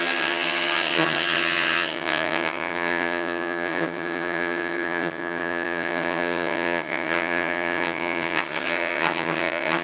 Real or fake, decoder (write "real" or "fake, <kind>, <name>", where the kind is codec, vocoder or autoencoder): fake, vocoder, HiFi-GAN